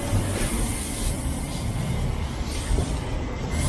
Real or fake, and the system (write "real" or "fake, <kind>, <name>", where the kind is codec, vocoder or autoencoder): real